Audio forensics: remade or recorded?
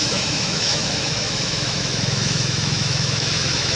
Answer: remade